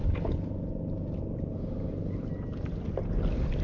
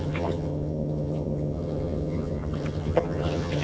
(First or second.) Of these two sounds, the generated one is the second